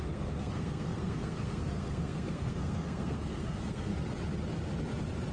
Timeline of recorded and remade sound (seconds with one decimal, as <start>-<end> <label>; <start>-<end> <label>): 0.0-3.9 remade; 3.9-5.3 recorded